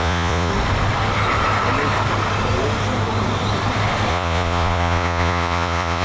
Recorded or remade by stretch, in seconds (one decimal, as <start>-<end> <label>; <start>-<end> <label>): 0.0-0.5 remade; 0.5-4.1 recorded; 4.1-6.0 remade